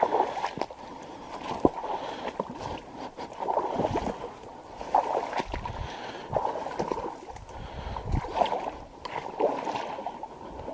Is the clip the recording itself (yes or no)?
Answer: yes